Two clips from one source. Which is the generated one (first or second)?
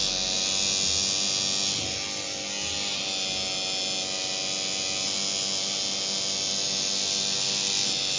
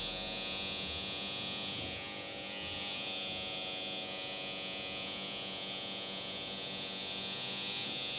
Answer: second